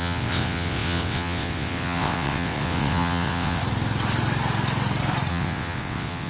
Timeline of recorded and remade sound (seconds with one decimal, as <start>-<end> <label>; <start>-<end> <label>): 0.0-3.6 remade; 3.6-5.3 recorded; 5.3-6.3 remade